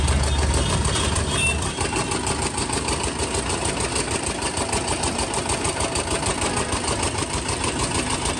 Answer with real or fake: real